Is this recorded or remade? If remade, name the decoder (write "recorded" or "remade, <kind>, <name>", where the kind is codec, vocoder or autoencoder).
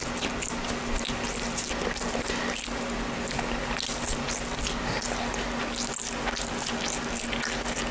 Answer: recorded